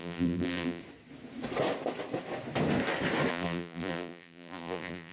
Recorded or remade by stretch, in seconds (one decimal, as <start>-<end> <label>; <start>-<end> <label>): 0.0-0.8 remade; 0.8-3.3 recorded; 3.3-5.1 remade